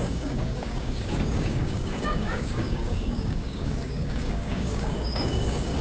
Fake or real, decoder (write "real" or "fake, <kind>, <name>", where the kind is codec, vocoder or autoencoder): fake, codec, DAC